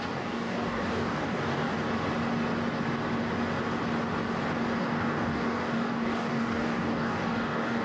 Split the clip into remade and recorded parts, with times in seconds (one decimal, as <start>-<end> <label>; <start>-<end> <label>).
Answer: 0.0-1.7 remade; 1.7-4.8 recorded; 4.8-7.8 remade